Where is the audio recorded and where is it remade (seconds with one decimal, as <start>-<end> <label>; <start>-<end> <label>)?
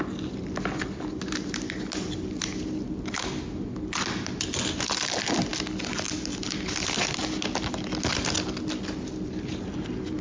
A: 0.0-10.2 recorded